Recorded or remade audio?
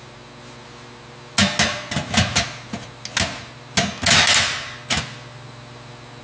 recorded